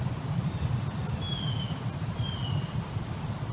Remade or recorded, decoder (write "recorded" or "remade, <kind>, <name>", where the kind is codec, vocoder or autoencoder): recorded